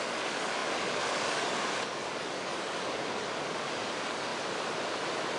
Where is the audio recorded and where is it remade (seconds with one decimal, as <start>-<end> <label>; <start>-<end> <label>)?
0.0-4.3 remade; 4.3-5.4 recorded